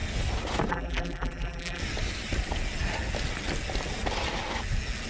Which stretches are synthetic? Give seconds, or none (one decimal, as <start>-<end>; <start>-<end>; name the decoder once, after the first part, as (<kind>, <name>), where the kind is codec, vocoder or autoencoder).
0.7-1.8 (vocoder, BigVGAN v2)